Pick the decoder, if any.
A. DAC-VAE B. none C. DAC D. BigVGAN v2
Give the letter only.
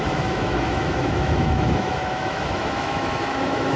A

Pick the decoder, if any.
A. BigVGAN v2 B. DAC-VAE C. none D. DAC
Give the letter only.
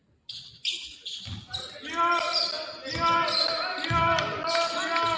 C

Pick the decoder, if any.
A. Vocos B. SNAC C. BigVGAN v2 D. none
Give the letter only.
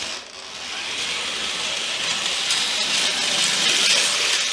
D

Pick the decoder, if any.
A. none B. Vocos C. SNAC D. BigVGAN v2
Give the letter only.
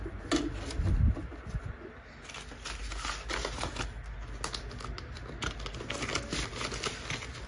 A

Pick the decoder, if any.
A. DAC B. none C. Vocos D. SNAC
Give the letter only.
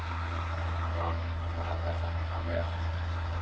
D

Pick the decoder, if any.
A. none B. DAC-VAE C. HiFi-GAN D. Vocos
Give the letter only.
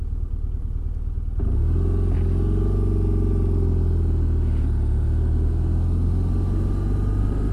A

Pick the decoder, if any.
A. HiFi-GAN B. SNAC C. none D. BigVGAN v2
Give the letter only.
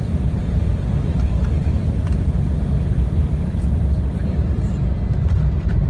D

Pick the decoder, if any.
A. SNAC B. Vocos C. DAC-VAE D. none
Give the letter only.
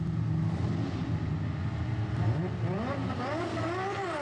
D